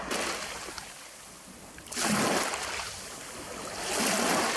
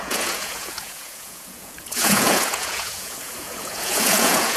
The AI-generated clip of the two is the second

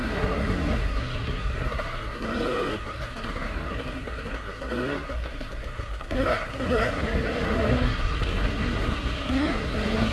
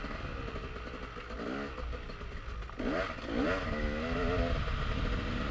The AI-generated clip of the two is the first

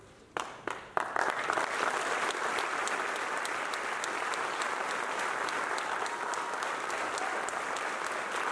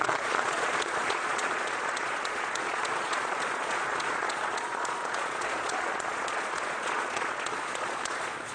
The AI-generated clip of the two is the second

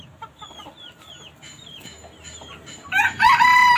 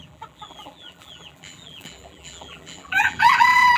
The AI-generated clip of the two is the second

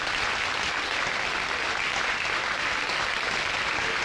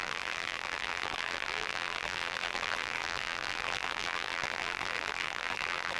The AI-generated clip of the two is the second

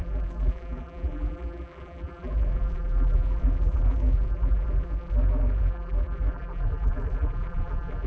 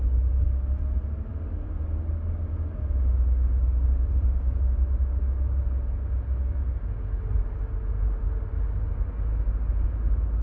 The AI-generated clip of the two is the first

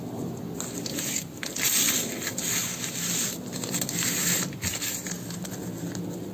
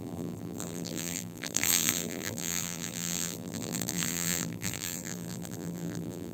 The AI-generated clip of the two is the second